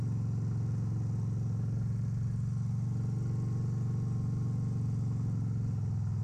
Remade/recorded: recorded